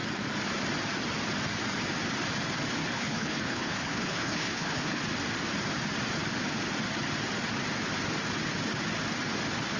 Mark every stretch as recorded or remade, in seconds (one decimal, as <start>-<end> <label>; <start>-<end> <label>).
0.0-2.8 recorded; 2.8-5.0 remade; 5.0-9.8 recorded